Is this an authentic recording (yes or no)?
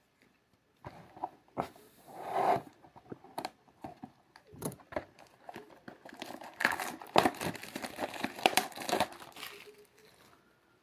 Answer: yes